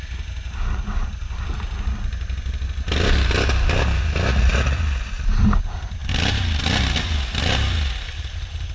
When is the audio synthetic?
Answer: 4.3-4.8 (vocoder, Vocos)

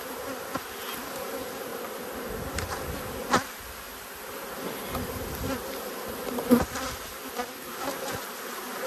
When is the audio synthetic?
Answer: none

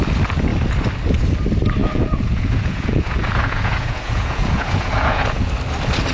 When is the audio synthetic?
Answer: 1.8-5.5 (vocoder, Vocos)